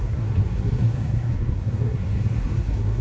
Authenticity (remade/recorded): remade